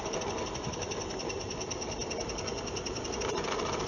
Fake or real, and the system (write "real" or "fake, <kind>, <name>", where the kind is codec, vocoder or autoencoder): real